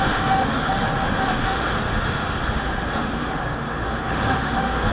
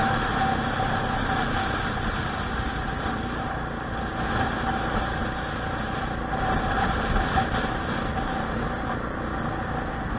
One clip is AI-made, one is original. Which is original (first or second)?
second